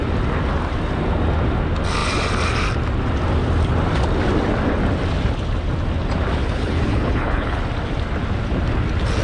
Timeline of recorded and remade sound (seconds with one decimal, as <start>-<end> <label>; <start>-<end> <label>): 0.0-6.4 recorded; 6.4-7.6 remade; 7.6-9.2 recorded